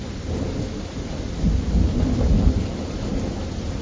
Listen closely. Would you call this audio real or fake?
real